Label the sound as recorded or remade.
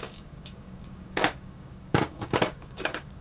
remade